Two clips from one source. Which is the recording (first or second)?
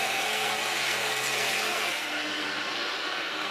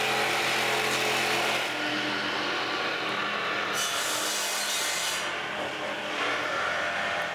second